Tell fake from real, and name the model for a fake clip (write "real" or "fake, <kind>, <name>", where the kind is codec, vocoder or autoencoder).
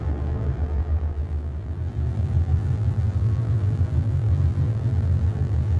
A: fake, vocoder, BigVGAN v2